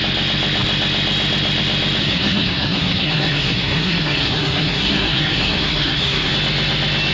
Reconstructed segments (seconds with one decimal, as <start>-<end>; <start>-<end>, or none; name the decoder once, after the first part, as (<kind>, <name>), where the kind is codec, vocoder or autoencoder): 2.0-6.3 (codec, SNAC)